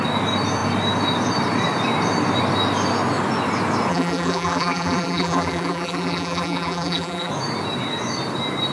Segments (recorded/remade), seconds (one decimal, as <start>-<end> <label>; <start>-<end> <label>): 0.0-3.9 recorded; 3.9-7.3 remade; 7.3-8.7 recorded